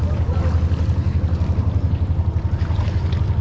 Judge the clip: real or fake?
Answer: real